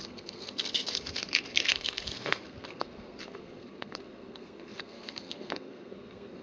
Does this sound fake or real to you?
fake